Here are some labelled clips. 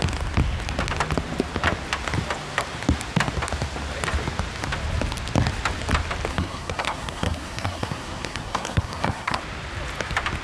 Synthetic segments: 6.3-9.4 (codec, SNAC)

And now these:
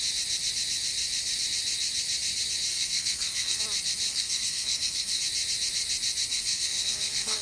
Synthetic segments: 2.7-3.6 (codec, SNAC); 4.1-5.2; 6.3-7.4